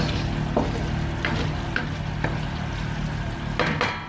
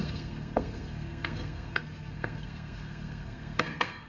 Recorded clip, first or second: first